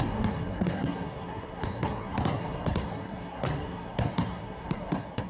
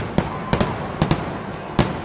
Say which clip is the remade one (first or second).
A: first